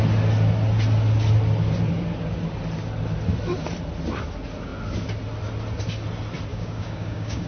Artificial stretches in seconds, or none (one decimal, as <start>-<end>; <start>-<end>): 6.5-7.5